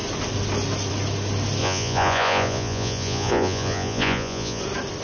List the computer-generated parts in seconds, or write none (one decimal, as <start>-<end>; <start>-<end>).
1.6-4.6